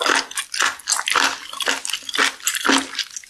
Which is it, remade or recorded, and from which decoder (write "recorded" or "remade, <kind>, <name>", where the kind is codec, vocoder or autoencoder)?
recorded